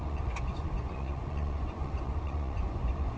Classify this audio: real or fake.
fake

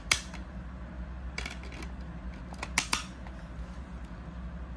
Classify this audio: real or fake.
real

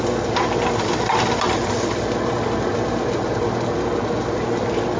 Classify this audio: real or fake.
real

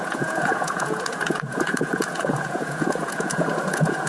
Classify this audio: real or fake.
fake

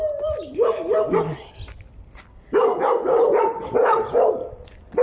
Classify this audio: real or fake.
real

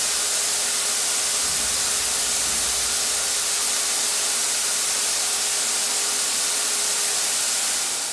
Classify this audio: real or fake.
real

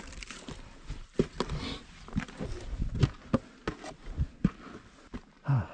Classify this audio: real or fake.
real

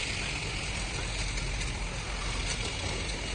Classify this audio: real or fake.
real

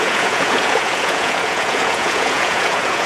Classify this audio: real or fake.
fake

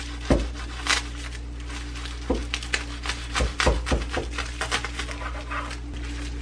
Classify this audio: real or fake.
real